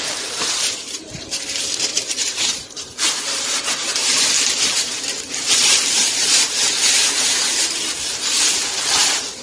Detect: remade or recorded remade